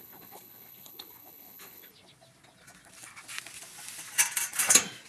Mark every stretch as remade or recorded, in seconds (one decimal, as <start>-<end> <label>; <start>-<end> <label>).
0.0-1.9 remade; 1.9-5.1 recorded